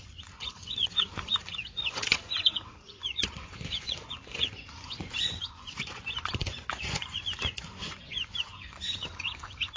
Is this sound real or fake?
fake